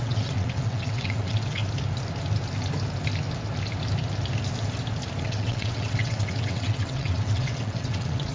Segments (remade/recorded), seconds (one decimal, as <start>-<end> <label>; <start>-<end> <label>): 0.0-1.6 remade; 1.6-5.2 recorded; 5.2-8.3 remade